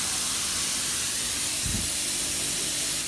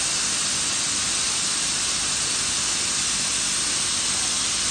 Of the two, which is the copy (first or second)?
first